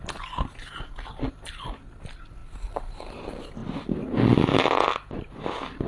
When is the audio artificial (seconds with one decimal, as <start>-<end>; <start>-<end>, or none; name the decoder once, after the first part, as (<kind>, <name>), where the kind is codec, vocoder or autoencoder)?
2.4-3.1 (vocoder, BigVGAN v2)